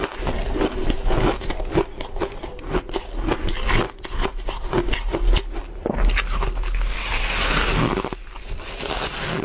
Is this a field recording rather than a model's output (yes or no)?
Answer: yes